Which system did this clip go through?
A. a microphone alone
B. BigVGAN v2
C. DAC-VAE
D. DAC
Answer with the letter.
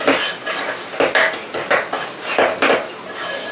A